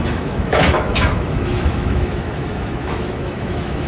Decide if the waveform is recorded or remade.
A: remade